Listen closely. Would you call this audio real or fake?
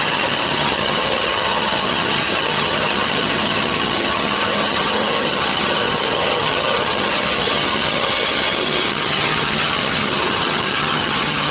fake